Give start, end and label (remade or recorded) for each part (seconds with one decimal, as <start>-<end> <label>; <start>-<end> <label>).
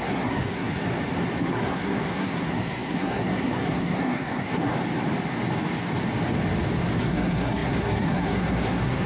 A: 0.0-0.7 remade; 0.7-1.4 recorded; 1.4-4.7 remade; 4.7-7.0 recorded; 7.0-9.1 remade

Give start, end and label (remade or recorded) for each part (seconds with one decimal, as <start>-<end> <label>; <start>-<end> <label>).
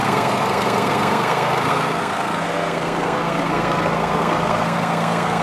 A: 0.0-5.4 remade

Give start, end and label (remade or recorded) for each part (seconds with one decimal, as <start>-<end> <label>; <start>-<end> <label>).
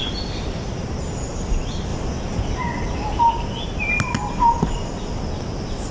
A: 0.0-5.9 recorded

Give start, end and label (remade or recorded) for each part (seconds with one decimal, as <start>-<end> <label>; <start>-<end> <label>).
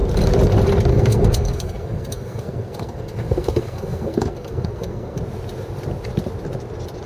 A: 0.0-0.9 recorded; 0.9-5.2 remade; 5.2-7.1 recorded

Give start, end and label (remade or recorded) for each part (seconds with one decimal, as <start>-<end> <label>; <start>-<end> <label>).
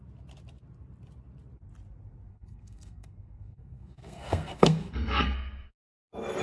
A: 0.0-2.3 recorded; 2.3-5.8 remade; 5.8-6.4 recorded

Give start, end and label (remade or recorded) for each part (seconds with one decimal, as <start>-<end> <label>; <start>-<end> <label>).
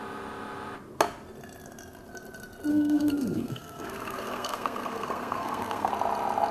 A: 0.0-2.7 recorded; 2.7-5.9 remade; 5.9-6.5 recorded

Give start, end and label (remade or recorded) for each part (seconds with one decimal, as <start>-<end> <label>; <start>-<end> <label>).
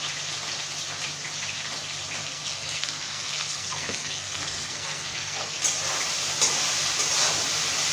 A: 0.0-2.2 recorded; 2.2-5.6 remade; 5.6-7.9 recorded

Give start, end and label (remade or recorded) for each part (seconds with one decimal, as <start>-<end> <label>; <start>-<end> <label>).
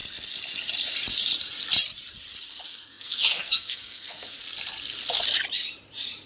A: 0.0-2.5 recorded; 2.5-4.4 remade; 4.4-6.3 recorded